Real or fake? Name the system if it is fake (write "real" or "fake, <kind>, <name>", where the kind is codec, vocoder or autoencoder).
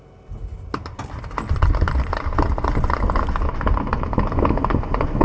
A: real